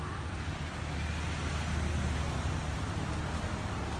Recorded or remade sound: recorded